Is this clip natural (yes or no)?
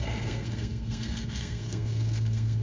no